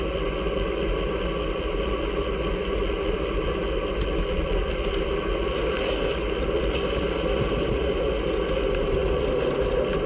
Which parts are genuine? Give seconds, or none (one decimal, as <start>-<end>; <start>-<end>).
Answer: 0.0-10.1